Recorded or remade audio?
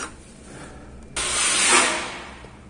recorded